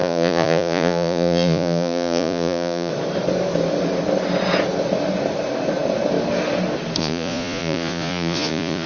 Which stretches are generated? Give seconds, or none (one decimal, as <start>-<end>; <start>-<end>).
0.0-2.9; 7.0-8.9